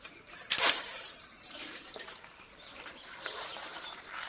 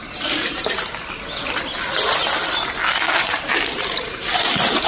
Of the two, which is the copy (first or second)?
first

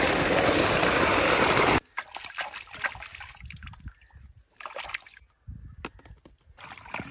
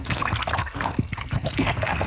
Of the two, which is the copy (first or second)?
second